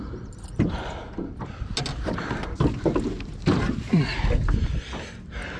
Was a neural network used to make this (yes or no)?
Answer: no